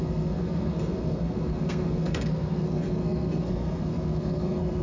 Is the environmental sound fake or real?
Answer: fake